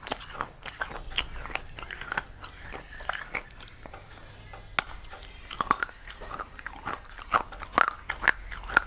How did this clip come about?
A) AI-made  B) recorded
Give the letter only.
B